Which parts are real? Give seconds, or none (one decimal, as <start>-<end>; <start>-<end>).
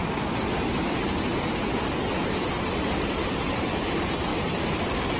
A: 0.0-4.3